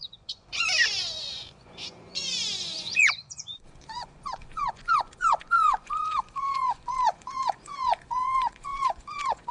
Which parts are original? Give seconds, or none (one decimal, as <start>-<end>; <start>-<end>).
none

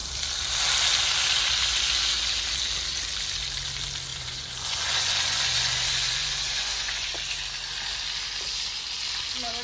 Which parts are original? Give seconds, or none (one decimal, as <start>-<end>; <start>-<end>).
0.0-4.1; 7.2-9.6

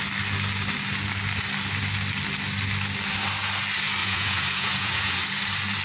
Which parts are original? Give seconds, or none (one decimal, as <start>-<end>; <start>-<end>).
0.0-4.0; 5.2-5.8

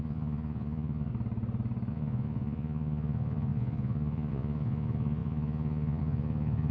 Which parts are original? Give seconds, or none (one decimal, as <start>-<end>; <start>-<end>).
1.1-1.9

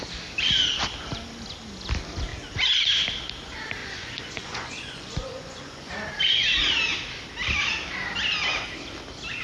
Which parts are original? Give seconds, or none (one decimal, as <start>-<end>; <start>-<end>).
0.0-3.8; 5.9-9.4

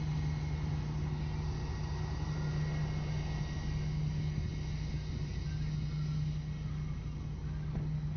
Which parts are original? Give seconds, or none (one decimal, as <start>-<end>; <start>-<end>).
0.0-8.2

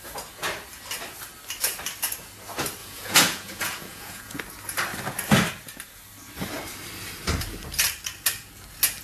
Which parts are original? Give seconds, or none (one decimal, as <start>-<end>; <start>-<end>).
0.0-2.8; 4.4-9.0